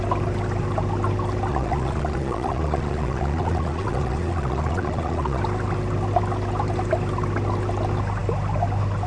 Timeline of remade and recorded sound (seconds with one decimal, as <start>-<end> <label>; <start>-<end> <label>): 0.0-1.5 recorded; 1.5-5.4 remade; 5.4-9.1 recorded